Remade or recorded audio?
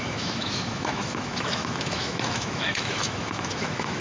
remade